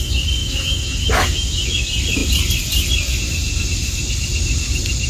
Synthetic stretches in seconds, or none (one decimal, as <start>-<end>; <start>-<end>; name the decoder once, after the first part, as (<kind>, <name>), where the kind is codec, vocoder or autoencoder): 0.4-1.8 (autoencoder, DAC-VAE)